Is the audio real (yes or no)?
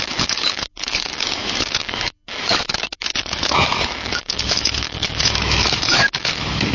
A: no